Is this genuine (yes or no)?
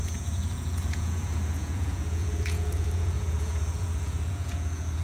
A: no